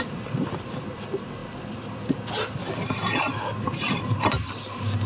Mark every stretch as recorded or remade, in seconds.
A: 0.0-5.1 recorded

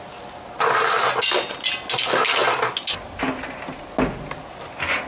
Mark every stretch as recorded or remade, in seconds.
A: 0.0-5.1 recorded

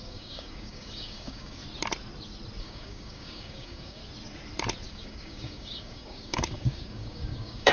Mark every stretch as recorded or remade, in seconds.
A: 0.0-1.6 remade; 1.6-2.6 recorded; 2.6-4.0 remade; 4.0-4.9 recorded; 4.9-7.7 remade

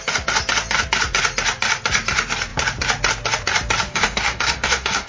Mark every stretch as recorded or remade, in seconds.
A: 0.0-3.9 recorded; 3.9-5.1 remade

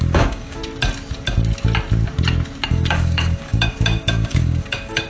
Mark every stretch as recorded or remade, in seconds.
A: 0.0-0.6 remade; 0.6-2.7 recorded; 2.7-5.1 remade